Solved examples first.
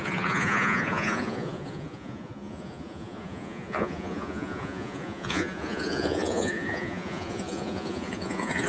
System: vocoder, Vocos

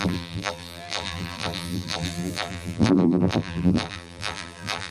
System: vocoder, BigVGAN v2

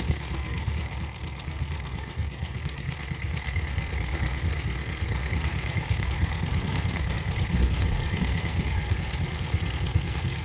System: codec, SNAC